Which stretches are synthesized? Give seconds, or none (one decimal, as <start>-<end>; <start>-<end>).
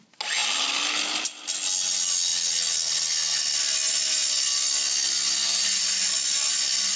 none